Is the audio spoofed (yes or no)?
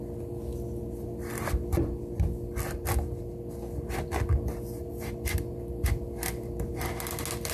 no